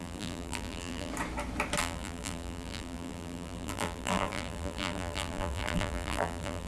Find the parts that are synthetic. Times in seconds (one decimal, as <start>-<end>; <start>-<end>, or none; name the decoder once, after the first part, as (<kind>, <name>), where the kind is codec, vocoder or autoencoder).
0.0-1.1 (vocoder, BigVGAN v2); 1.8-6.7